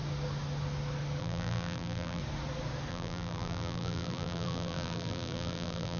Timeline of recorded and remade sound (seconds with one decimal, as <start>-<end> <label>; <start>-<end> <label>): 0.0-1.2 recorded; 1.2-2.2 remade; 2.2-2.9 recorded; 2.9-6.0 remade